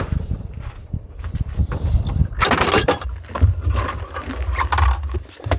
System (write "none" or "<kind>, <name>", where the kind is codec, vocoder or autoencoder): none